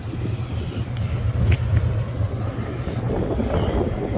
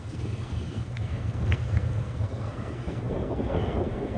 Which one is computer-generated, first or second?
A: second